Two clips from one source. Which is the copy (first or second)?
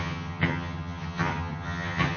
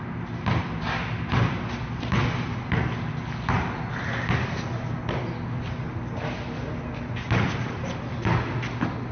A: first